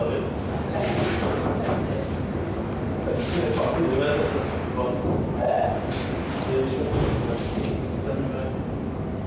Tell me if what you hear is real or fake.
real